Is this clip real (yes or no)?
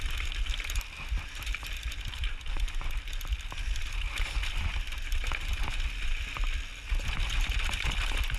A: yes